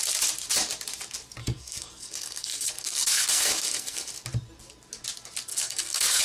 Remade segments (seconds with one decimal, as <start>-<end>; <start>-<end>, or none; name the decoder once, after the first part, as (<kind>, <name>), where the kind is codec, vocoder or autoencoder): 1.4-4.1 (codec, SNAC); 5.5-6.2